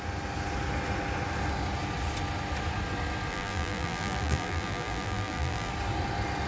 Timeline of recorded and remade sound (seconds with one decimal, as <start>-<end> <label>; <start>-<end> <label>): 0.0-3.3 recorded; 3.3-5.7 remade; 5.7-6.5 recorded